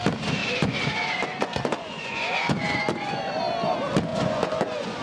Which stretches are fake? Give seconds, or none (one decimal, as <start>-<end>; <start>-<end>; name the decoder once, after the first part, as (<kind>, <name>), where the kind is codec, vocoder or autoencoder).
0.4-3.4 (vocoder, Vocos); 4.1-5.0